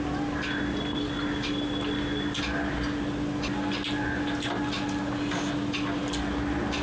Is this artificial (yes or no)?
no